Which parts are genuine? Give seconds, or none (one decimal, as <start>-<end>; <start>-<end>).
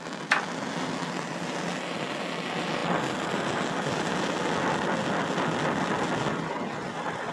0.0-7.3